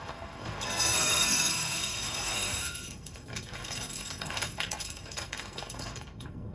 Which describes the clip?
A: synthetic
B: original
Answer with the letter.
A